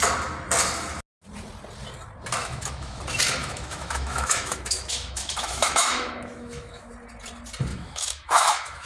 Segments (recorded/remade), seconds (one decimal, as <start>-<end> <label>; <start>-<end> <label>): 0.0-2.4 recorded; 2.4-3.0 remade; 3.0-3.4 recorded; 3.4-6.9 remade; 6.9-7.7 recorded; 7.7-8.9 remade